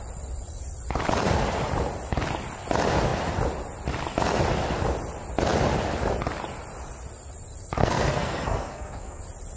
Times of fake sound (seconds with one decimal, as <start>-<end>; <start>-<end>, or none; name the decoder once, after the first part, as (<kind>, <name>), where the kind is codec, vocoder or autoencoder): 7.8-9.2 (codec, SNAC)